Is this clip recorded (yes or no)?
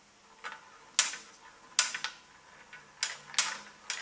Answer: yes